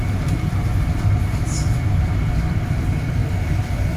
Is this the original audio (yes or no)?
yes